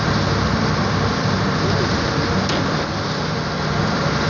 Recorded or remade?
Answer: recorded